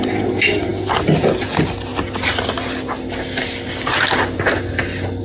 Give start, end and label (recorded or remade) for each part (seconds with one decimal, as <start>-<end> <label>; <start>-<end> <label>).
0.0-5.2 recorded